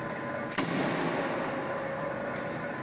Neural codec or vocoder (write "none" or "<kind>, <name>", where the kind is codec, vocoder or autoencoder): none